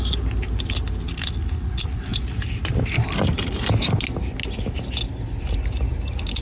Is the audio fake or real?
real